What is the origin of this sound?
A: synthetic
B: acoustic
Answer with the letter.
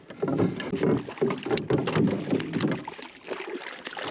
B